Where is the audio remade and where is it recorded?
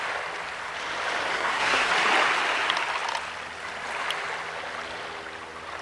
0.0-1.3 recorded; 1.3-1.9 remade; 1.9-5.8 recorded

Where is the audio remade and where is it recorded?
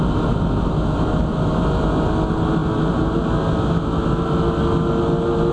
0.0-5.5 recorded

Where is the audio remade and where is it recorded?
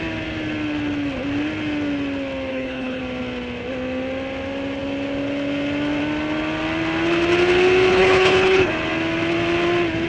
0.0-2.5 recorded; 2.5-3.0 remade; 3.0-7.9 recorded; 7.9-8.7 remade; 8.7-10.1 recorded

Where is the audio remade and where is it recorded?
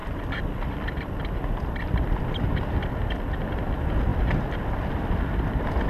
0.0-3.4 remade; 3.4-5.9 recorded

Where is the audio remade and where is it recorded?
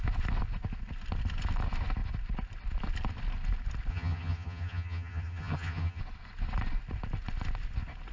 0.0-3.9 recorded; 3.9-6.0 remade; 6.0-8.1 recorded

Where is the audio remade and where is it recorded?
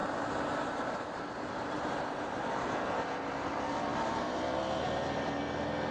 0.0-3.5 remade; 3.5-3.9 recorded; 3.9-4.4 remade; 4.4-5.9 recorded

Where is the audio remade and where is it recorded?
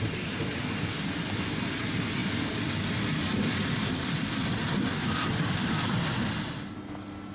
0.0-7.3 recorded